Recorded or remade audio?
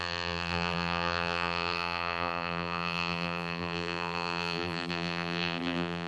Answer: remade